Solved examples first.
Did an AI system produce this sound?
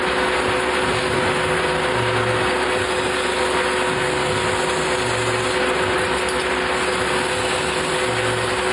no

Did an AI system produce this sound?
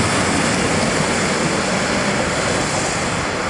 no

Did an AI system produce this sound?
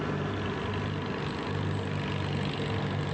no